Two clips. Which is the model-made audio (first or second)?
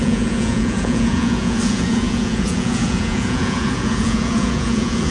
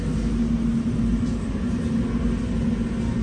first